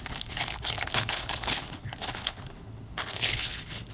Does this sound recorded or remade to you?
remade